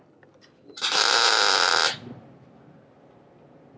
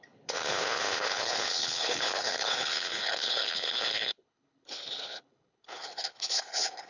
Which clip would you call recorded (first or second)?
first